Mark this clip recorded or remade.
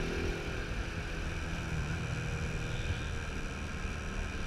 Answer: recorded